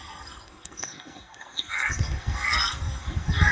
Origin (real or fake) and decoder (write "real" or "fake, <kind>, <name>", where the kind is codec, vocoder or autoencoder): fake, codec, SNAC